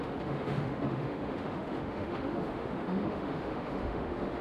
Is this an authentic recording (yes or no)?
no